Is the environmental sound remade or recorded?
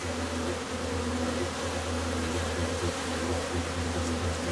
recorded